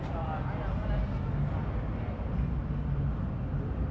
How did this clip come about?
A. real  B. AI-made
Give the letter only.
A